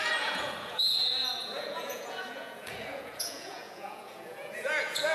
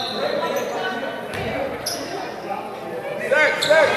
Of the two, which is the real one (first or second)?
second